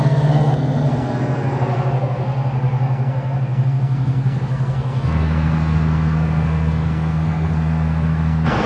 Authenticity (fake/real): fake